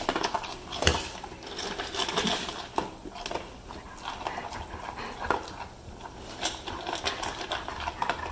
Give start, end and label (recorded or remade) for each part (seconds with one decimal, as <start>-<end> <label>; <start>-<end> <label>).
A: 0.0-8.3 recorded

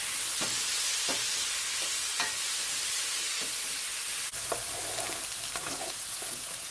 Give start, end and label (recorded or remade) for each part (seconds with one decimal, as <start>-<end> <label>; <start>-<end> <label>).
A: 0.0-5.6 recorded; 5.6-6.7 remade

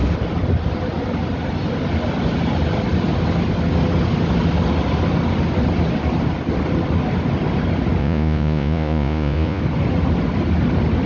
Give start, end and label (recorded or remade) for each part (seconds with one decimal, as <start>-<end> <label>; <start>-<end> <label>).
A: 0.0-8.0 recorded; 8.0-9.6 remade; 9.6-11.1 recorded

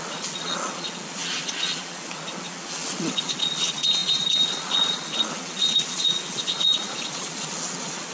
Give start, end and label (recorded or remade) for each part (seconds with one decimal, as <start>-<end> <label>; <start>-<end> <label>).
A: 0.0-8.1 remade

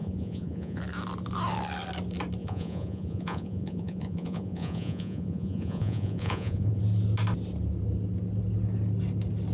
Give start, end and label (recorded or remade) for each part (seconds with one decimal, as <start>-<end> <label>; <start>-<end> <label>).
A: 0.0-0.8 remade; 0.8-2.4 recorded; 2.4-6.8 remade; 6.8-9.5 recorded

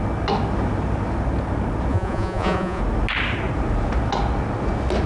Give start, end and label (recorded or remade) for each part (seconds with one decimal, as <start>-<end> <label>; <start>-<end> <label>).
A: 0.0-1.9 recorded; 1.9-2.8 remade; 2.8-5.1 recorded